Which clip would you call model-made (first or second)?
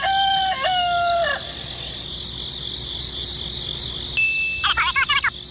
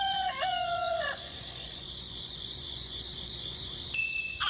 second